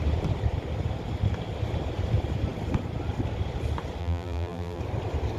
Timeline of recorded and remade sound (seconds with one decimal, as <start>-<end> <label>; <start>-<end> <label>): 0.0-4.0 recorded; 4.0-4.8 remade; 4.8-5.4 recorded